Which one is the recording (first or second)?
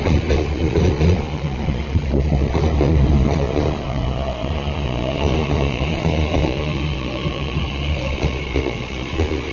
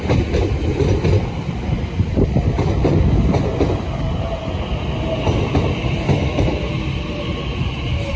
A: second